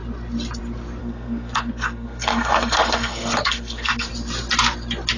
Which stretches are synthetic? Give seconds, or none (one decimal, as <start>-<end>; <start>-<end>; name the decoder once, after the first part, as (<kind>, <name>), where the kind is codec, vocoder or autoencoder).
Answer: 1.0-4.1 (codec, SNAC)